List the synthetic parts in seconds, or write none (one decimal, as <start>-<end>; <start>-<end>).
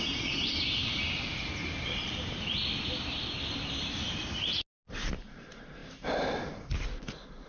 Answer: 1.6-2.6